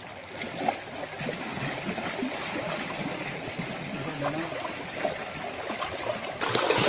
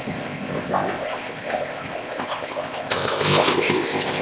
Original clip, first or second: first